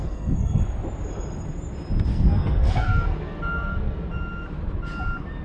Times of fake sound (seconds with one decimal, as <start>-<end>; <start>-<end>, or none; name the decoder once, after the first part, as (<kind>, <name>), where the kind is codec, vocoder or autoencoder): 0.0-0.6 (codec, SNAC); 2.1-4.1